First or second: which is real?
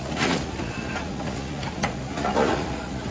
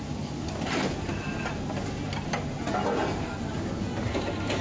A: second